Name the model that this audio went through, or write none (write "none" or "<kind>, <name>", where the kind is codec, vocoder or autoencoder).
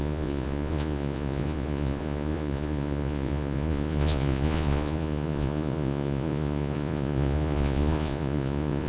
vocoder, Vocos